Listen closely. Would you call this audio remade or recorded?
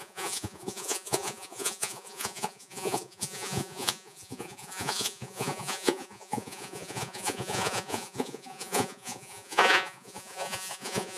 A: remade